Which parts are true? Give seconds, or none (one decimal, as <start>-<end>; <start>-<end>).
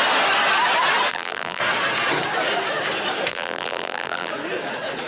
0.0-1.1; 1.6-3.3; 4.3-5.1